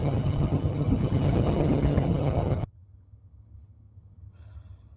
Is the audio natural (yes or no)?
no